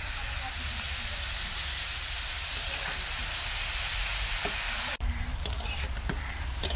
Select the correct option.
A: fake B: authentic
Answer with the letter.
A